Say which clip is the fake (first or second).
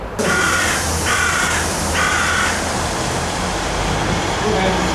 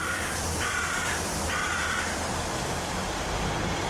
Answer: second